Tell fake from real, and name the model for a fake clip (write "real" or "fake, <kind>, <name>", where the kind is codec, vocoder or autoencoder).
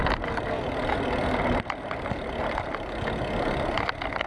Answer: real